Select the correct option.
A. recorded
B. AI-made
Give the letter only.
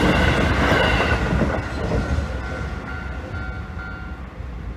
A